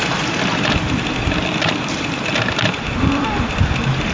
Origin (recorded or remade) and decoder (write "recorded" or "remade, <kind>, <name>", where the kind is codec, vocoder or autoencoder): recorded